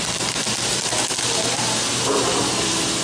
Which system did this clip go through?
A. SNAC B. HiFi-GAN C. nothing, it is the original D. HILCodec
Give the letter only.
C